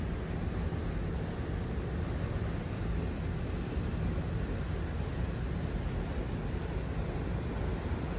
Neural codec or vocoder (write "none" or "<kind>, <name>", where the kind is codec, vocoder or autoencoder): none